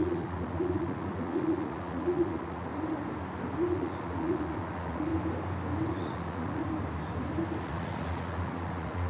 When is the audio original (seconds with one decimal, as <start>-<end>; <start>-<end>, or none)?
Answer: 2.7-3.7; 5.1-5.9; 6.6-7.6